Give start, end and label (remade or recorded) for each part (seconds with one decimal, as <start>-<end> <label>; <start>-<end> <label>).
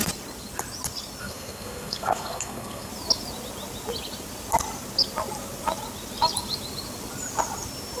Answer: 0.0-1.2 recorded; 1.2-2.9 remade; 2.9-8.0 recorded